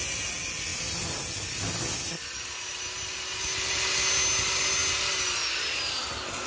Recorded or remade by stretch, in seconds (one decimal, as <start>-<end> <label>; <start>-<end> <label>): 0.0-6.5 recorded